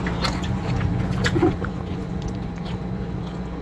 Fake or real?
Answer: fake